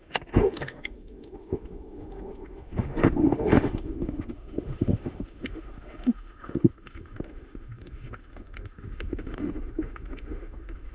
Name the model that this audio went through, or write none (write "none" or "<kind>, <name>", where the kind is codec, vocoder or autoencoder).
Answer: autoencoder, DAC-VAE